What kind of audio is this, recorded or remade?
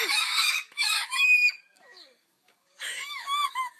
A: remade